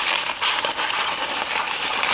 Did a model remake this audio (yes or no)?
yes